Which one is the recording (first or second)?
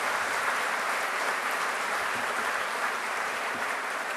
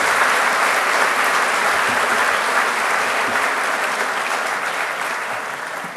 second